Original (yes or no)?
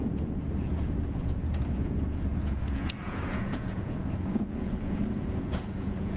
no